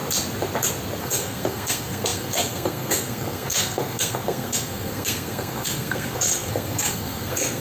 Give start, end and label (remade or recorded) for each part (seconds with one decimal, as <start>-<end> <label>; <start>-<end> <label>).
0.0-1.0 recorded; 1.0-7.6 remade